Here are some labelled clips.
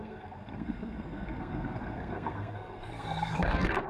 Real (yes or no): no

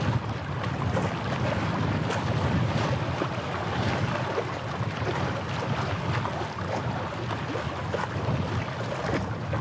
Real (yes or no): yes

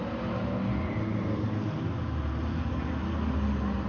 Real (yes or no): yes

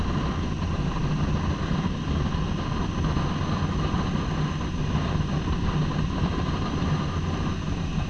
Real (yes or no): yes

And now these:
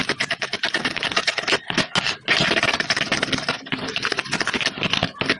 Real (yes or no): yes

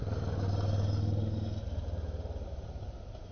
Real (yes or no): yes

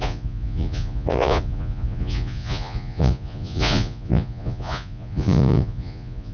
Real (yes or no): no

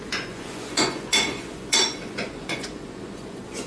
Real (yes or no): no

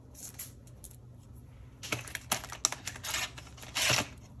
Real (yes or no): yes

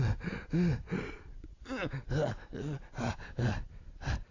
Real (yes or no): yes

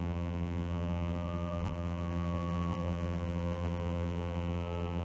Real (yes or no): no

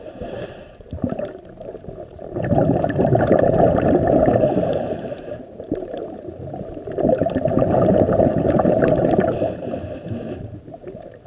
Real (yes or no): no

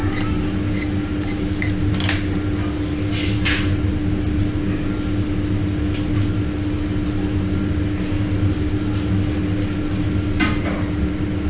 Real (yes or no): yes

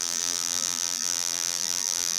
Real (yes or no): no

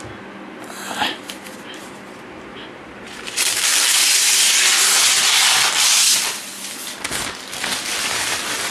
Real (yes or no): yes